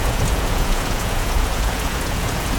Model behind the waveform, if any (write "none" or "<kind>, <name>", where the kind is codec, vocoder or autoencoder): vocoder, Vocos